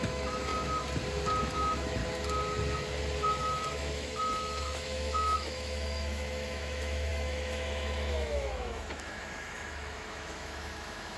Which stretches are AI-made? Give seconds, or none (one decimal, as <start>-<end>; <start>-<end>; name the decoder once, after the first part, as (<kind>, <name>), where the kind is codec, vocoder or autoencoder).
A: 0.0-0.5 (autoencoder, DAC-VAE); 1.4-2.0; 3.4-11.2

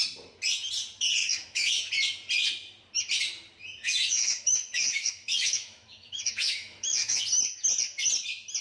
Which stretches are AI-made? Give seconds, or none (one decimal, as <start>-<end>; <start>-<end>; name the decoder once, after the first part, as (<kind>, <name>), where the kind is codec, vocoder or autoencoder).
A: 1.2-1.9 (autoencoder, DAC-VAE); 3.8-7.2

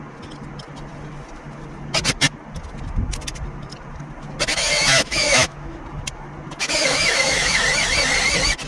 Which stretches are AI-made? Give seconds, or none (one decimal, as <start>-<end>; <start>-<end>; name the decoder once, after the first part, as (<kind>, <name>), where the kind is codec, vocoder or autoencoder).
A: 4.5-5.8 (autoencoder, DAC-VAE); 6.6-7.6

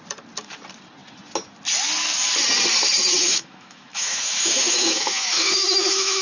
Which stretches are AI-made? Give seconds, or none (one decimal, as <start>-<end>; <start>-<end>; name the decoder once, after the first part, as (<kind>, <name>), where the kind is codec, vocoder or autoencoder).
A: 3.1-6.2 (autoencoder, DAC-VAE)

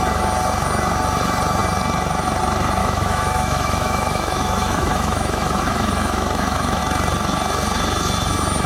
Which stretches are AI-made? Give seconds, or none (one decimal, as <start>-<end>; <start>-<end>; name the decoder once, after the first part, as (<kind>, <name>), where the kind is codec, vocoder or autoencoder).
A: 2.8-6.8 (autoencoder, DAC-VAE)

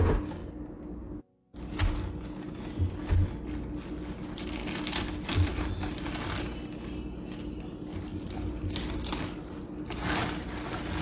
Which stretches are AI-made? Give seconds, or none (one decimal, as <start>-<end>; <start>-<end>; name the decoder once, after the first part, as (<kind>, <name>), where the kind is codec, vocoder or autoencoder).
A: none

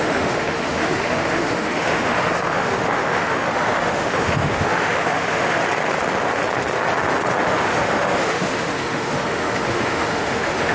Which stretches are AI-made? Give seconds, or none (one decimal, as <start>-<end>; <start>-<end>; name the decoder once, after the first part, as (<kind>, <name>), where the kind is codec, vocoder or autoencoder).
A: 0.0-5.6 (autoencoder, DAC-VAE); 7.4-10.7